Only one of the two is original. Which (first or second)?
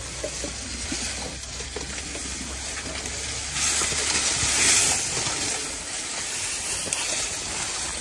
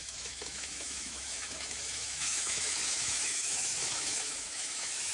first